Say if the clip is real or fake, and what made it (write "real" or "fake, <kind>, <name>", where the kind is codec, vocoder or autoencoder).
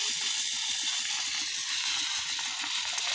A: real